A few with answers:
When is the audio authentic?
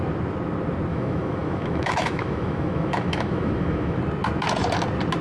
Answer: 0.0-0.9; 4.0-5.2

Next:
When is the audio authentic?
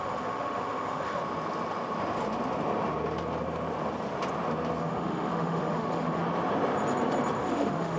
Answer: 1.2-4.8; 6.2-7.4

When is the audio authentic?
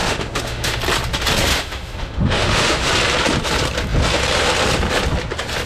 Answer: 0.8-1.5; 2.9-5.7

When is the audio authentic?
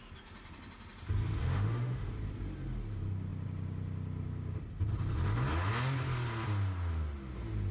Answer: 0.0-1.4; 2.1-7.7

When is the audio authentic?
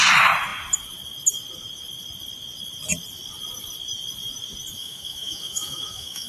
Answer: 0.0-4.8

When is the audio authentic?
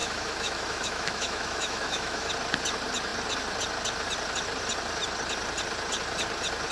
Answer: 2.3-6.7